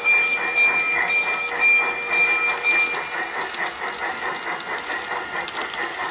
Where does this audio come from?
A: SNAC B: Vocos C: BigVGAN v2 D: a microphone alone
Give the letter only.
D